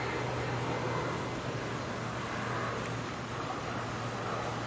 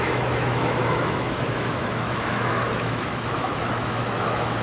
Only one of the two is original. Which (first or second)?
first